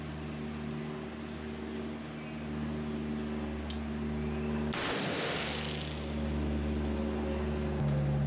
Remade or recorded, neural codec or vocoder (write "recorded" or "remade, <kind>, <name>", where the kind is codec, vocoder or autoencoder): recorded